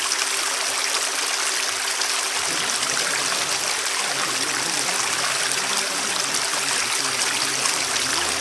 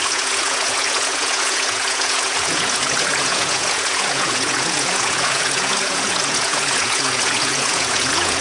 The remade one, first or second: second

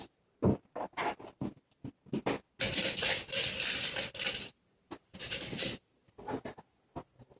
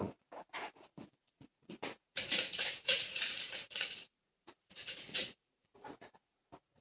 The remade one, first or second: second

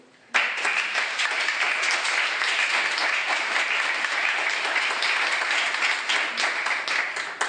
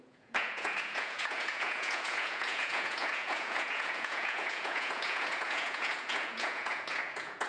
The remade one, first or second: second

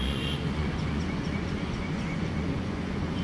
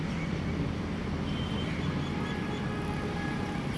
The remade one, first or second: first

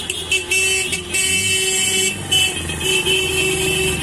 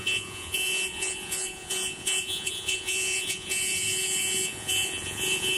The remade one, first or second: second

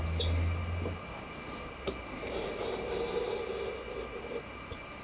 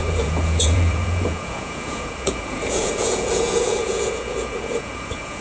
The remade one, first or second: second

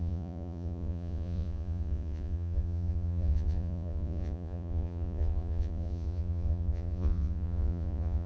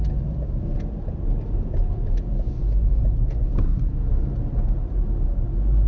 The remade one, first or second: first